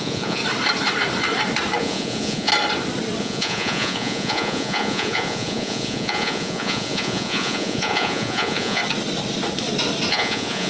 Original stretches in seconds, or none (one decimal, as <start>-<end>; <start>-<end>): 0.4-1.8; 2.5-3.2; 8.8-10.1